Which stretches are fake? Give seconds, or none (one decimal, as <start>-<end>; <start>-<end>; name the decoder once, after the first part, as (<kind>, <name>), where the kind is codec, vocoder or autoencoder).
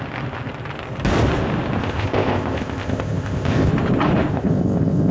1.8-3.7 (codec, ZipCodec); 4.3-5.1